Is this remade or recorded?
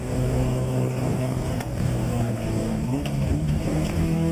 remade